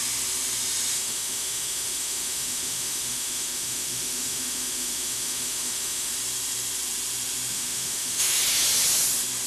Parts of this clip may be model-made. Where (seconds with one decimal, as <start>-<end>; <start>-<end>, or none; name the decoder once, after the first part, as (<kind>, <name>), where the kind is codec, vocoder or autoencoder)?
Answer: 0.9-6.1 (autoencoder, DAC-VAE); 7.5-8.4